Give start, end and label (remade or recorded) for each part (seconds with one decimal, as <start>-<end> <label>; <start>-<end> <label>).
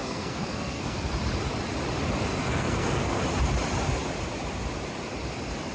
0.0-1.1 remade; 1.1-2.4 recorded; 2.4-3.2 remade; 3.2-5.7 recorded